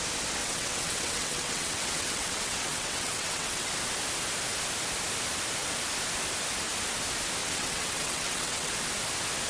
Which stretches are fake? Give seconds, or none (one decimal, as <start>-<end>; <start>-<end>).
0.4-3.7; 7.4-8.7